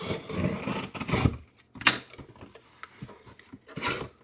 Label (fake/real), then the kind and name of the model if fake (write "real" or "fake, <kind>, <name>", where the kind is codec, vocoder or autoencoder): real